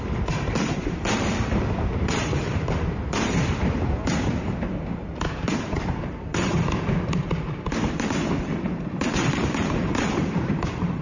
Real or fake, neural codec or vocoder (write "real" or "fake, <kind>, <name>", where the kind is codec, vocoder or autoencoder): fake, vocoder, BigVGAN v2